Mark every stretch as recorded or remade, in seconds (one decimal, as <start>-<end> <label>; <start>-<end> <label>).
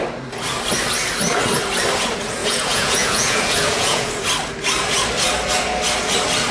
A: 0.0-2.4 recorded; 2.4-4.1 remade; 4.1-6.5 recorded